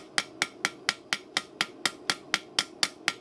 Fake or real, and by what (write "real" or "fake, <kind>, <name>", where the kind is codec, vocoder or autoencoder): real